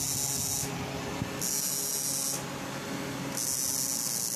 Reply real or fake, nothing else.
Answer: real